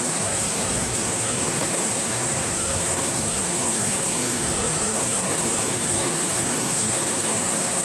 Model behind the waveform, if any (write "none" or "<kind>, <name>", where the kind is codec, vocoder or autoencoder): codec, SNAC